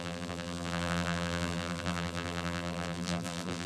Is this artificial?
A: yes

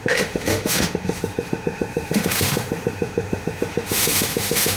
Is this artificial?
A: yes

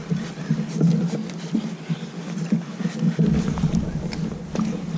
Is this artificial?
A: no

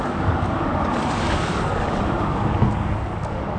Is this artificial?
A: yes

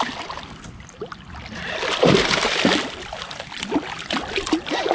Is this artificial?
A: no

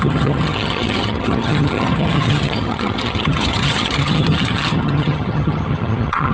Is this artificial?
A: yes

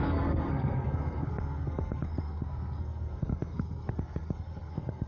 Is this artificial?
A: yes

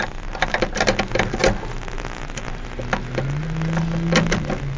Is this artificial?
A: no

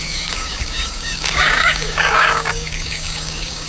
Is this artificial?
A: yes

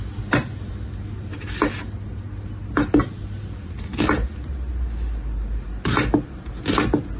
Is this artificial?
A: no